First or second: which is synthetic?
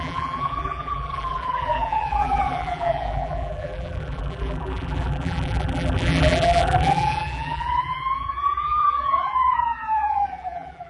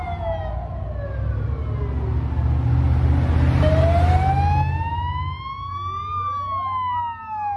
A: first